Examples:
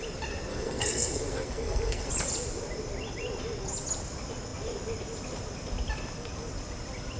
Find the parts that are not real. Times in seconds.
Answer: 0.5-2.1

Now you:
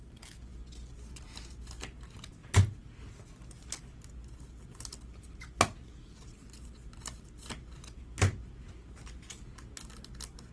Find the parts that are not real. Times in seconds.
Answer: none

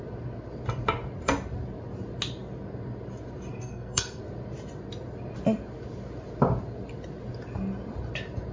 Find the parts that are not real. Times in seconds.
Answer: 3.5-4.2

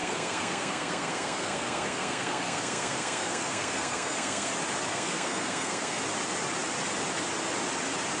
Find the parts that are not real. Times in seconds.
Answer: 0.0-4.5; 4.9-6.0

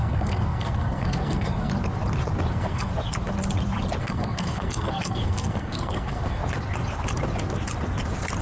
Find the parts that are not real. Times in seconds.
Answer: 0.0-1.7; 2.5-2.9; 4.0-6.4

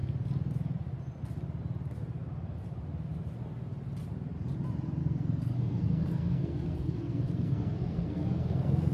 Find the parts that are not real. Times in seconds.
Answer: 5.0-8.9

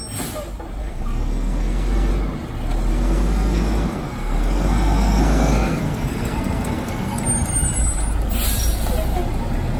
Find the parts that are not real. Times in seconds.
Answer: 0.8-2.1; 2.9-7.2